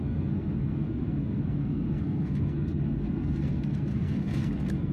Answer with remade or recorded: remade